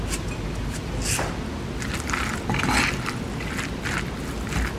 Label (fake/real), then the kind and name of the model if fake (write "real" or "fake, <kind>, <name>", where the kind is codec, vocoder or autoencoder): real